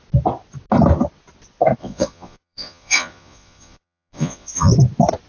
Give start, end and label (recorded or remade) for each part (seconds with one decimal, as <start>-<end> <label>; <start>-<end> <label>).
0.0-1.8 recorded; 1.8-4.7 remade; 4.7-5.3 recorded